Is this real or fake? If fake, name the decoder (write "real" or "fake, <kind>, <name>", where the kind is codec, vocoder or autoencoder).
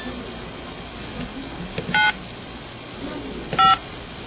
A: real